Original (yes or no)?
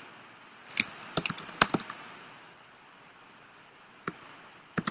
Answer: yes